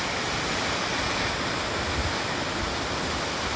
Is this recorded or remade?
recorded